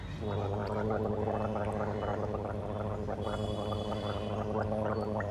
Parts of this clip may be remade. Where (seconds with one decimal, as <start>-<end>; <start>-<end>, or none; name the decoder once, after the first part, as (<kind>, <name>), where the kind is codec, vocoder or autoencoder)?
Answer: none